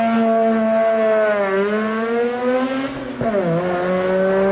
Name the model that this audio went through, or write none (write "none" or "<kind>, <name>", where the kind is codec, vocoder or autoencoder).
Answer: none